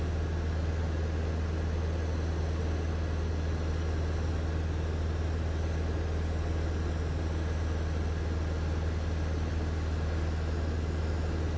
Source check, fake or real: real